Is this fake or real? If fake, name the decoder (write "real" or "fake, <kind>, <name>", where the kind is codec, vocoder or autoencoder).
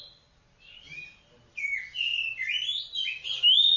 real